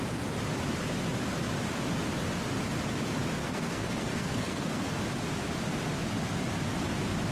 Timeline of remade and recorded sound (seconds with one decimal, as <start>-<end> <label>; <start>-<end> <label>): 0.0-3.4 recorded; 3.4-4.9 remade; 4.9-7.3 recorded